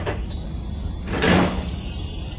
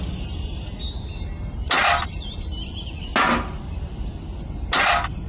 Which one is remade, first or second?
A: first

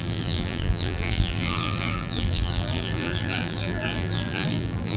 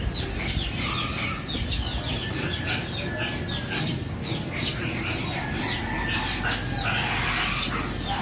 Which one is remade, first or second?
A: first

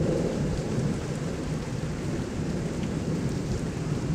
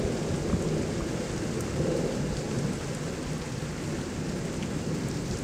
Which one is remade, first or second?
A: first